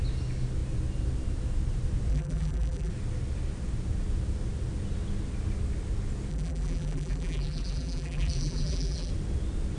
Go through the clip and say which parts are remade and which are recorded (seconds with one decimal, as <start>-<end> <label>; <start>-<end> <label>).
0.0-2.1 recorded; 2.1-2.9 remade; 2.9-6.3 recorded; 6.3-9.1 remade; 9.1-9.8 recorded